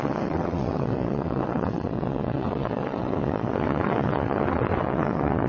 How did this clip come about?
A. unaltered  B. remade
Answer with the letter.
B